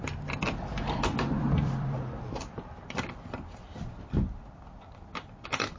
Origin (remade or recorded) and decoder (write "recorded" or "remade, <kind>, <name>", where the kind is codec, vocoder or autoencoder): remade, vocoder, BigVGAN v2